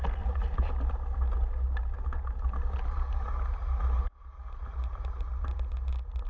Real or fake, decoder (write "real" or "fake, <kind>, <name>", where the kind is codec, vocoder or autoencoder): real